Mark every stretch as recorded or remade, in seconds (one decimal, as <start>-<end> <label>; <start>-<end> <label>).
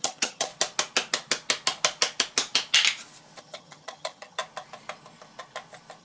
0.0-0.5 remade; 0.5-3.4 recorded; 3.4-4.4 remade; 4.4-6.0 recorded